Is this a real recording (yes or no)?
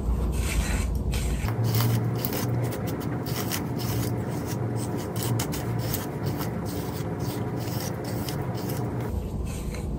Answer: yes